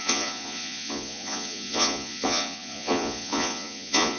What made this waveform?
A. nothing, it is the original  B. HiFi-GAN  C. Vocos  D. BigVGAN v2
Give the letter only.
C